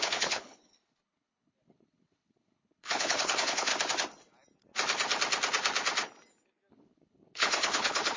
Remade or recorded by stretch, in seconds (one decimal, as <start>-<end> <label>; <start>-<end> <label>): 0.0-3.7 remade; 3.7-6.7 recorded; 6.7-8.2 remade